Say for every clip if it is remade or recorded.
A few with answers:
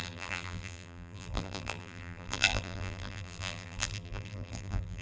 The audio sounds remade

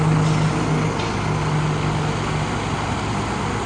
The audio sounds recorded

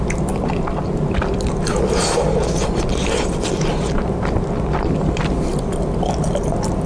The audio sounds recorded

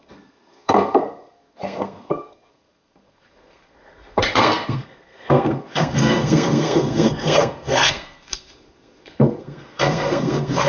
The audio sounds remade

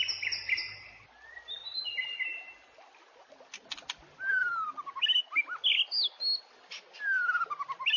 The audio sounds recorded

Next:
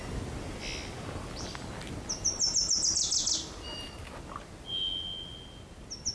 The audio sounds recorded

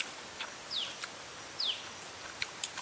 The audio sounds recorded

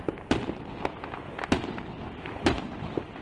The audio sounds recorded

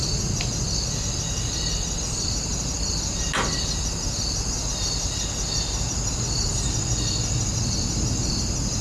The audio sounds recorded